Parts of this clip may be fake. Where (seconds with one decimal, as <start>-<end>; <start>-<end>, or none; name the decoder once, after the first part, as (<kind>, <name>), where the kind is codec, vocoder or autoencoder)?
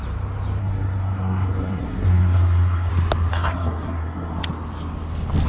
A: 0.6-2.9 (codec, SNAC); 3.3-4.4